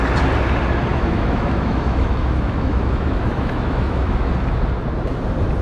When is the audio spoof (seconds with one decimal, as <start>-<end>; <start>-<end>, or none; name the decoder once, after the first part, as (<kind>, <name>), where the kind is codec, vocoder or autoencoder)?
0.9-4.3 (autoencoder, DAC-VAE)